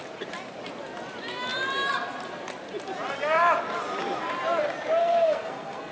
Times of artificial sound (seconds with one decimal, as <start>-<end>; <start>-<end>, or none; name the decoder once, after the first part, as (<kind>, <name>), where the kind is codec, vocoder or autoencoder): 5.0-5.9 (codec, SNAC)